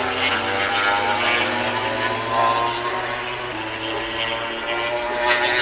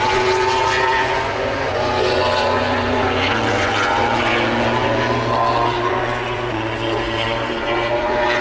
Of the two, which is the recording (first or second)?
first